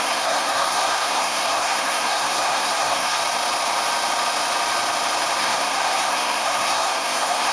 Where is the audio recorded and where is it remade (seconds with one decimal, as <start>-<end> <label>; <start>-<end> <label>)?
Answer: 0.0-3.2 remade; 3.2-5.4 recorded; 5.4-7.5 remade